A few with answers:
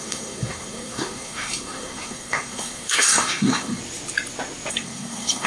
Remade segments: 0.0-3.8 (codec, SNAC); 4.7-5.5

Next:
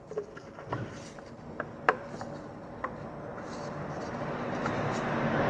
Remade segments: none

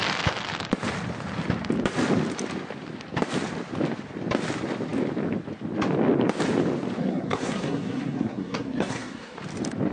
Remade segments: 7.0-9.4 (codec, SNAC)

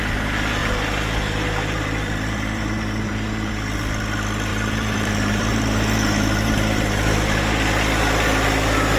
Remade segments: 0.6-3.5 (vocoder, BigVGAN v2); 4.5-7.4